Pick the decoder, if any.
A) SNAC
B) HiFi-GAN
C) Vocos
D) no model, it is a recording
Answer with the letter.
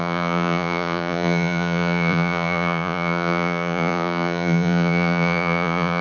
C